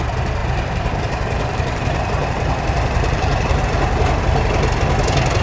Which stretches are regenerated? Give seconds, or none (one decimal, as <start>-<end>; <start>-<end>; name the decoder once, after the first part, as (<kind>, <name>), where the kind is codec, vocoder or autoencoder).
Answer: 0.4-3.6 (vocoder, BigVGAN v2)